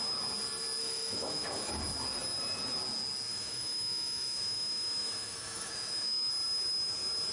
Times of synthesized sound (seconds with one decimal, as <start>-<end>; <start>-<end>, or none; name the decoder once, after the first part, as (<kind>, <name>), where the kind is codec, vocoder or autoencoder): 0.8-1.7 (autoencoder, DAC-VAE); 3.3-6.3